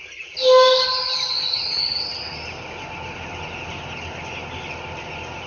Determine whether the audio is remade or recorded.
recorded